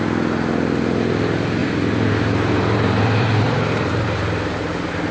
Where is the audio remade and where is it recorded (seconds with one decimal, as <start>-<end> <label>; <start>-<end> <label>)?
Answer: 0.0-1.6 recorded; 1.6-5.1 remade